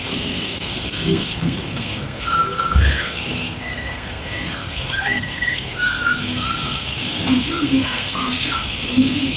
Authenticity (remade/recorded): remade